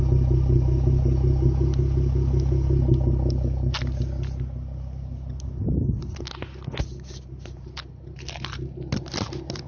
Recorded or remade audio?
recorded